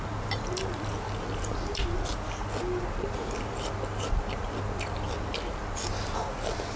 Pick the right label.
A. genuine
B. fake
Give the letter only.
A